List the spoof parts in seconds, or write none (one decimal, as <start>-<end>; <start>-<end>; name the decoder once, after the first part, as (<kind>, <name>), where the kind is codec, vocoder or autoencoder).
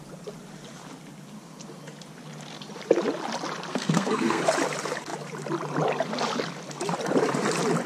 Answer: 3.7-4.4 (codec, SNAC)